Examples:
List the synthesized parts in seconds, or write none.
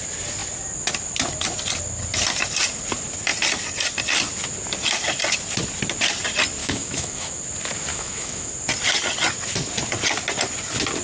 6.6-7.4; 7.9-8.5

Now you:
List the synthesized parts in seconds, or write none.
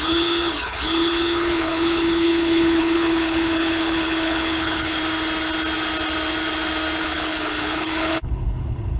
0.0-5.0; 7.0-9.0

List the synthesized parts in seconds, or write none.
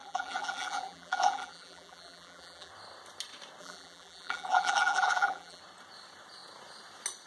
0.0-2.7; 3.6-5.6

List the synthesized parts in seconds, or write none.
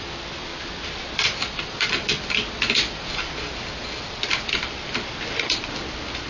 none